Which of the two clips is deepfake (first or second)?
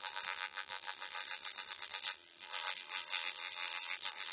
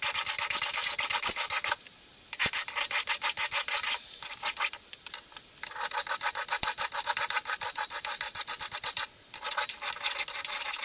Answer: first